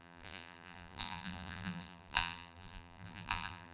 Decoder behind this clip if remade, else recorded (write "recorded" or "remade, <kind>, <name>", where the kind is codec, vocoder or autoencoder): remade, vocoder, BigVGAN v2